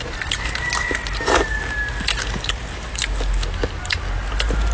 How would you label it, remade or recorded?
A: recorded